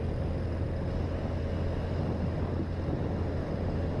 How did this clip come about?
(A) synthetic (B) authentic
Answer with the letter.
B